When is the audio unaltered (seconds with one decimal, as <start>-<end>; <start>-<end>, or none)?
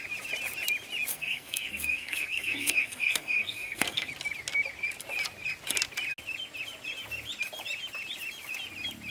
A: 0.0-1.1; 4.1-9.1